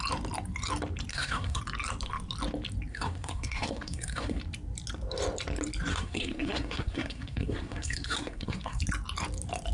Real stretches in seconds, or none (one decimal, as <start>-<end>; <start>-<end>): 0.0-1.1; 1.6-2.9; 4.4-5.9; 8.8-9.7